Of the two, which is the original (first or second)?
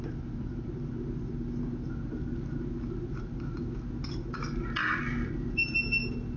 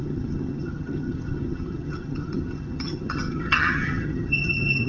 first